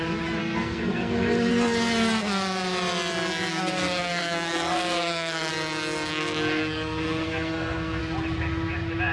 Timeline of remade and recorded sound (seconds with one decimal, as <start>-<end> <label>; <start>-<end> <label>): 0.0-0.4 recorded; 0.4-1.5 remade; 1.5-3.5 recorded; 3.5-5.5 remade; 5.5-6.1 recorded; 6.1-8.0 remade; 8.0-9.1 recorded